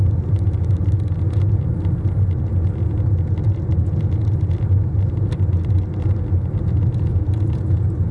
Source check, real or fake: real